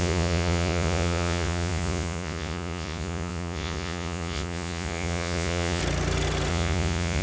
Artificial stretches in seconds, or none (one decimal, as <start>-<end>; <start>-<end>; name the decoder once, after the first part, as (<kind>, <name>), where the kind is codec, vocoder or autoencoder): 0.0-5.8 (vocoder, Vocos); 6.5-7.2